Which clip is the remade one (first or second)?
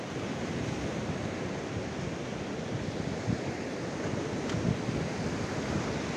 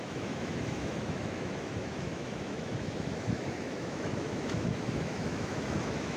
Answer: second